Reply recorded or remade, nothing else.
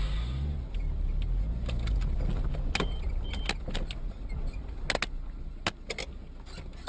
recorded